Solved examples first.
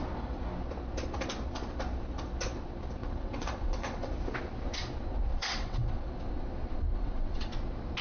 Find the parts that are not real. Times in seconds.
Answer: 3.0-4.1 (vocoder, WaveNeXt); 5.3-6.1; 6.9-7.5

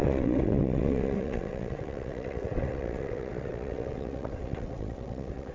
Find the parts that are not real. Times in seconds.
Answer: 0.0-5.5 (vocoder, WaveNeXt)

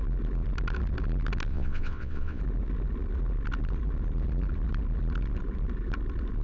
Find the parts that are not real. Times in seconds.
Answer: 1.5-2.4 (vocoder, WaveNeXt)